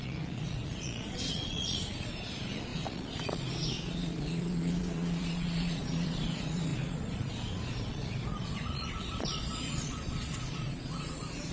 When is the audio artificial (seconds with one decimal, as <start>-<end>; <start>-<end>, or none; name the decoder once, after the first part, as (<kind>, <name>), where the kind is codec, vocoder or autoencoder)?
0.0-11.5 (vocoder, Vocos)